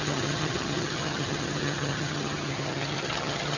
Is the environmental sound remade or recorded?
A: remade